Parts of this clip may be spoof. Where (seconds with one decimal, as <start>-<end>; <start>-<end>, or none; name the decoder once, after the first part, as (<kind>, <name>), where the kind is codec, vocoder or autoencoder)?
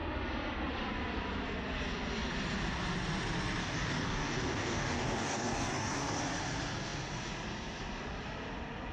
3.6-6.2 (codec, DAC)